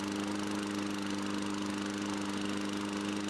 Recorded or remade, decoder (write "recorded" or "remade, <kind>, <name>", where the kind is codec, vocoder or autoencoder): recorded